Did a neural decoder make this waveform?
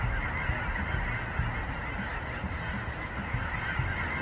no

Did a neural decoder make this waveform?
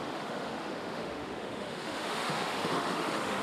yes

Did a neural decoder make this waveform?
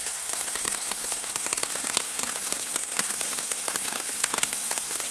yes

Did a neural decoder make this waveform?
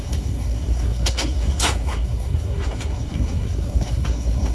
yes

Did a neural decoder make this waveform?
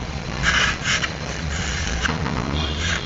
yes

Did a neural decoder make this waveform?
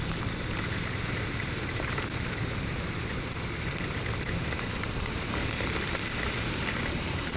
yes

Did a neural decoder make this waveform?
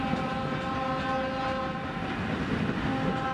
no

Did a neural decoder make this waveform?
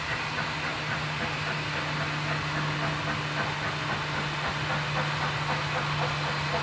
no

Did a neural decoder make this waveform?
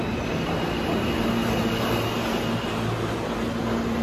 no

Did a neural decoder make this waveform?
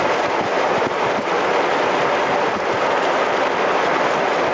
no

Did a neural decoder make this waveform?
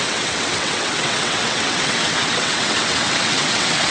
yes